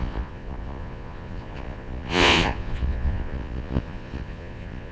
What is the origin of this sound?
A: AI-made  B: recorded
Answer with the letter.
A